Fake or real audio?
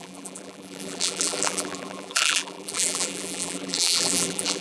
fake